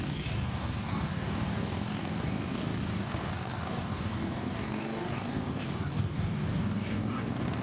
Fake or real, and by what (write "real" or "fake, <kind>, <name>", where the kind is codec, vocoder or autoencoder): fake, codec, DAC